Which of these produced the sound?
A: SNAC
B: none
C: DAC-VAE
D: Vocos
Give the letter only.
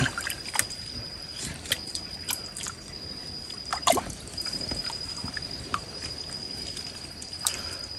B